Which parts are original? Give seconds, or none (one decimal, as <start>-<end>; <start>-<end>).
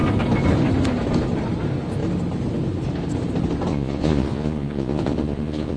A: 0.0-3.7